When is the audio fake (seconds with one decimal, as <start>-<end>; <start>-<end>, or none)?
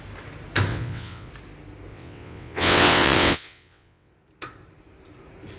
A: 0.7-1.3; 1.9-4.1